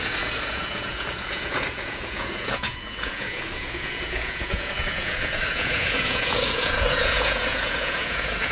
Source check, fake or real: fake